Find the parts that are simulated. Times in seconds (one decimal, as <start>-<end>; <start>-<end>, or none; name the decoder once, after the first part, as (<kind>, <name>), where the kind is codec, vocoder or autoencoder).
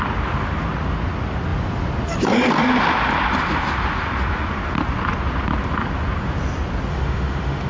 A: 6.9-7.7 (autoencoder, DAC-VAE)